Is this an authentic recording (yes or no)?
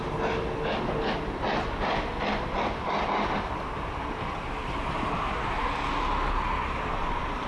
yes